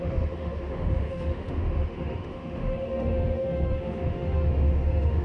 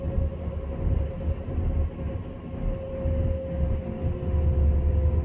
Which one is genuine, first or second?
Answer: second